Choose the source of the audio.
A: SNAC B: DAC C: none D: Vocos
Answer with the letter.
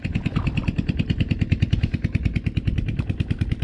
C